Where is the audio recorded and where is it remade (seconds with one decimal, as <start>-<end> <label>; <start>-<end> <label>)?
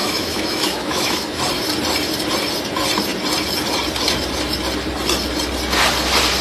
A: 0.0-1.4 remade; 1.4-6.4 recorded